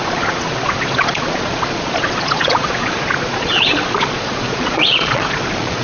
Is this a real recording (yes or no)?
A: no